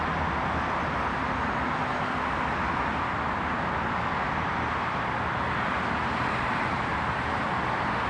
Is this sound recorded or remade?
recorded